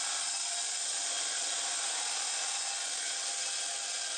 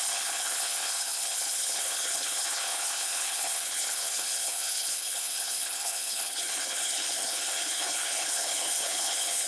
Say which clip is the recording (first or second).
first